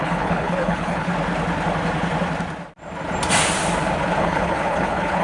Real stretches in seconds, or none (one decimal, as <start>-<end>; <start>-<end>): 1.1-4.2